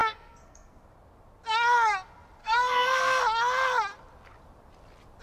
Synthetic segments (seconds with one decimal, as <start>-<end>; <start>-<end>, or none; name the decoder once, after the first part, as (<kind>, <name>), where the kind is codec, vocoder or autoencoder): 0.0-0.8 (codec, SNAC); 2.4-3.2